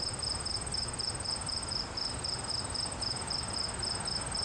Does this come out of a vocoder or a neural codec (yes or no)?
no